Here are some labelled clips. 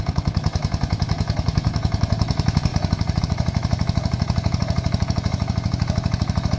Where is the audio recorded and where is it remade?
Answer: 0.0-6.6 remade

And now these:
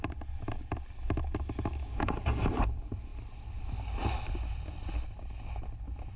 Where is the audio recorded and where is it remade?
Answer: 0.0-6.2 recorded